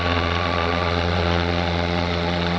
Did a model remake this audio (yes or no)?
yes